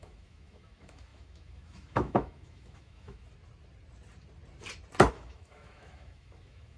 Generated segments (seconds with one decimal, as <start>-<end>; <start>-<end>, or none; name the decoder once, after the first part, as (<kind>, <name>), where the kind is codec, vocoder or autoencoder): 0.0-3.3 (autoencoder, DAC-VAE); 5.1-6.8